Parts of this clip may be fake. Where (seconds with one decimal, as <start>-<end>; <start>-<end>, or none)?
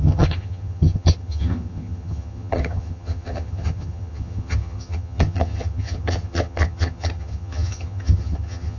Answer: 0.0-8.8